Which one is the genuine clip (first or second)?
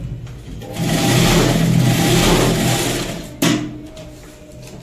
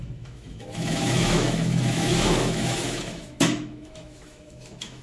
first